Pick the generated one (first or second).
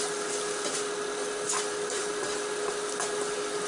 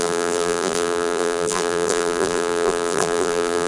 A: second